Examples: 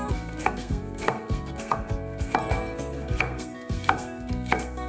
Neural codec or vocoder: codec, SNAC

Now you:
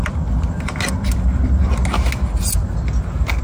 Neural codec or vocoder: none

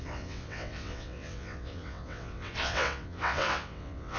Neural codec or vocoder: vocoder, WaveNeXt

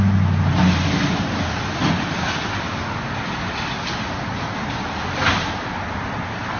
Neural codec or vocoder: none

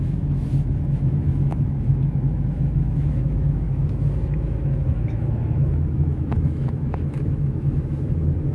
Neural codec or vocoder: autoencoder, DAC-VAE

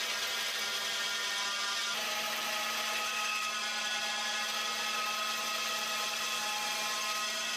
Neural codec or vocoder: none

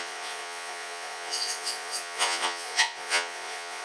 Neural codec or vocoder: vocoder, Vocos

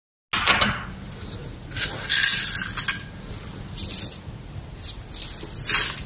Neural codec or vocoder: none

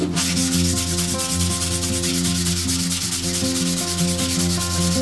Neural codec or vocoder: none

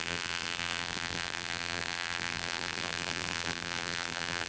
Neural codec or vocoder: vocoder, BigVGAN v2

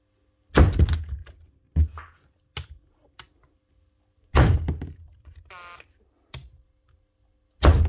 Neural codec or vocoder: none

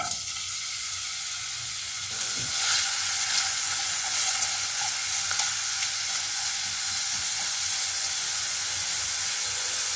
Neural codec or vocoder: vocoder, Vocos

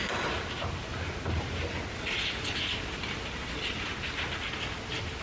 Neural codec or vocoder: none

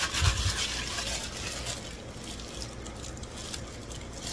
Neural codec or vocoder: none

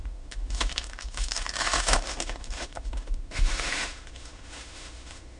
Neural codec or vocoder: autoencoder, DAC-VAE